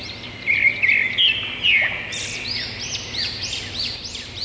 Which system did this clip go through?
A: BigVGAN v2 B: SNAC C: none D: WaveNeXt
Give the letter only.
C